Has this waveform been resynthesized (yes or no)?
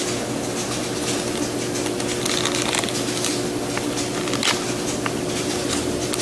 no